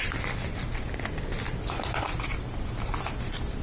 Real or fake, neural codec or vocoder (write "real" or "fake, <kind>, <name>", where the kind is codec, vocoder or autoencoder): real